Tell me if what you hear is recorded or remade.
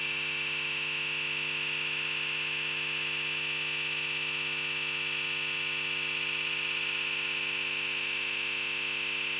remade